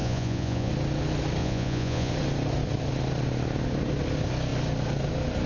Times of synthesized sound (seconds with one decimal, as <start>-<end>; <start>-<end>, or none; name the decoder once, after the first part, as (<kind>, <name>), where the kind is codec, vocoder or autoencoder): 0.0-0.7 (vocoder, Vocos); 1.4-2.1